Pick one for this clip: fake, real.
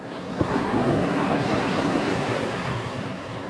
fake